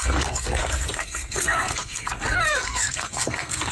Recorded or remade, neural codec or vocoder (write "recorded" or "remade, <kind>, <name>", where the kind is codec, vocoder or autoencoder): remade, codec, SNAC